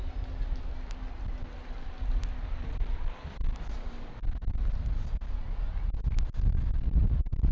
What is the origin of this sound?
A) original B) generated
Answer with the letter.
A